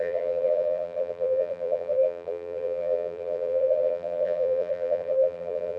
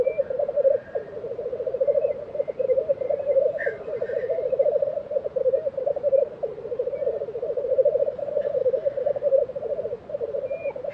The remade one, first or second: first